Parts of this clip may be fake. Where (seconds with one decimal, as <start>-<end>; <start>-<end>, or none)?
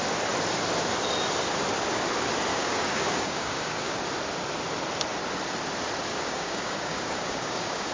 2.5-4.0; 6.1-7.9